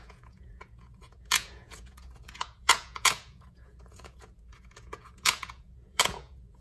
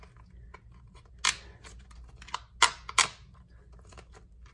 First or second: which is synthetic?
first